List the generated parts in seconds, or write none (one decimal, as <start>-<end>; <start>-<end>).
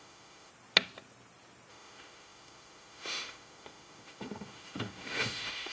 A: 0.0-0.5; 1.7-5.7